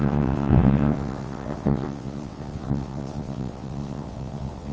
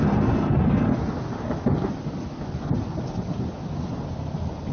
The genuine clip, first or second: second